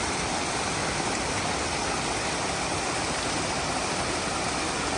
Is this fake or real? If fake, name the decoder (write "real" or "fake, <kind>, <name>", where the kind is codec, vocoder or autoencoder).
real